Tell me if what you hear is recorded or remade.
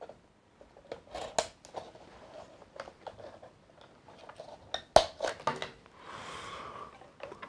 recorded